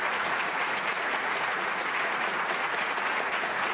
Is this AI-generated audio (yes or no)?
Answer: yes